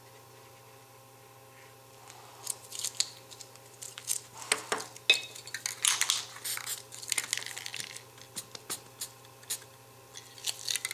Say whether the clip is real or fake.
real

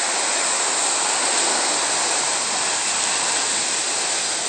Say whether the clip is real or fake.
real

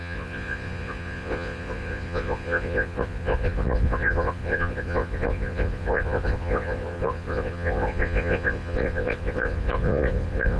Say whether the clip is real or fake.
fake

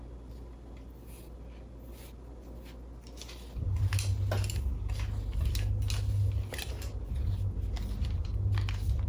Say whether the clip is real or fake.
real